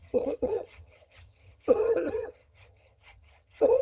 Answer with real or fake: fake